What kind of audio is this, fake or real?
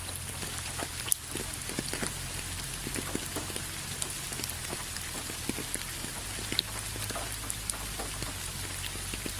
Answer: real